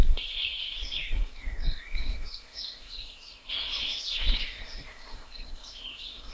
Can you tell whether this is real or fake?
fake